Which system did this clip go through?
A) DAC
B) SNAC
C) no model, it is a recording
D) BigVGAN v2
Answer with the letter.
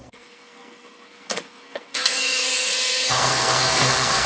B